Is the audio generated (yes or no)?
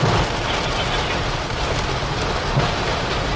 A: no